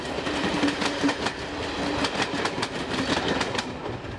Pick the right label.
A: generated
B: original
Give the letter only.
B